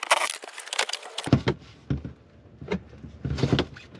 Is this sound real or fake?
real